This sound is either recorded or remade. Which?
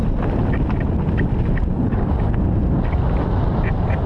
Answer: recorded